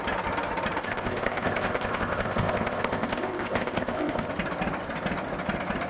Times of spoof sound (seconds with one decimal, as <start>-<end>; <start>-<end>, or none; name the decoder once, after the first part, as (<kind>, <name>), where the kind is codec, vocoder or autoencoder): 0.8-4.3 (codec, ZipCodec)